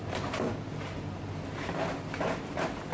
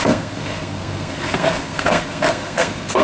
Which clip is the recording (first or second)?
first